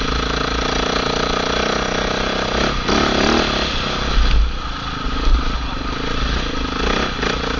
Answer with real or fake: real